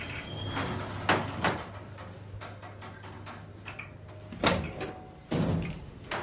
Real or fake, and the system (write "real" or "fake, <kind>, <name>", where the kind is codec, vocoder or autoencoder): real